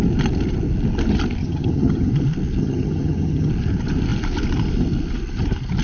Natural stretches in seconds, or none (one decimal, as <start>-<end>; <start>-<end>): 0.0-1.4; 2.1-2.6; 3.5-5.8